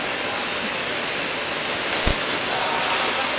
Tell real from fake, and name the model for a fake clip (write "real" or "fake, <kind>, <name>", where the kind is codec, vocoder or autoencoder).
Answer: real